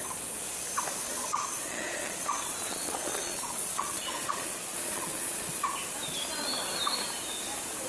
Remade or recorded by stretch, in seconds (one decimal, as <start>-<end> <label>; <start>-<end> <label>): 0.0-1.0 recorded; 1.0-5.7 remade; 5.7-7.9 recorded